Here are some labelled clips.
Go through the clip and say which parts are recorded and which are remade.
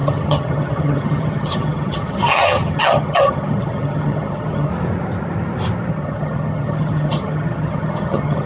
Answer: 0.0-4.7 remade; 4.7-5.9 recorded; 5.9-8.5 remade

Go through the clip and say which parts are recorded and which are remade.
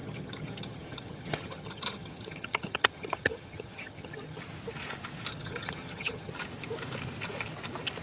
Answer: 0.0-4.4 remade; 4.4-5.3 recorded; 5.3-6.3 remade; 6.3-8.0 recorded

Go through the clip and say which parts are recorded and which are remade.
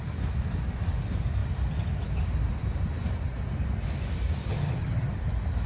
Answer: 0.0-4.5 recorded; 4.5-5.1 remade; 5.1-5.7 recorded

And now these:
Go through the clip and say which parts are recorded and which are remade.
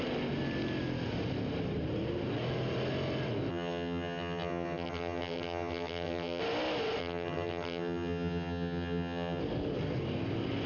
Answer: 0.0-3.5 recorded; 3.5-6.4 remade; 6.4-7.0 recorded; 7.0-9.4 remade; 9.4-10.7 recorded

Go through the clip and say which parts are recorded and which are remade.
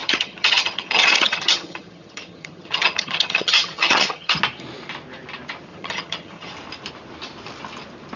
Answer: 0.0-4.4 remade; 4.4-5.7 recorded; 5.7-6.5 remade; 6.5-8.2 recorded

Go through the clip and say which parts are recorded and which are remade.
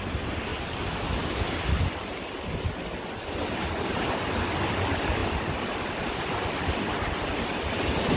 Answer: 0.0-8.2 recorded